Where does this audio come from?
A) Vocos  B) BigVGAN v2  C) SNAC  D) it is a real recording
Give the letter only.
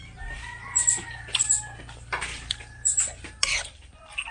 D